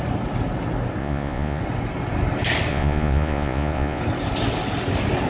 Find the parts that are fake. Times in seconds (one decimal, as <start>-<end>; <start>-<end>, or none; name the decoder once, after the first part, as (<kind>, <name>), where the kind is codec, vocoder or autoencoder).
1.0-1.6 (vocoder, Vocos); 2.7-4.0